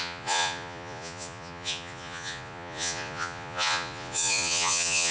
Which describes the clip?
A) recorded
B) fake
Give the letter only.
B